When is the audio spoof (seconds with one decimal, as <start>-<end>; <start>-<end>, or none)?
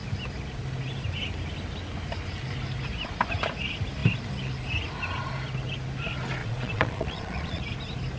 6.4-7.6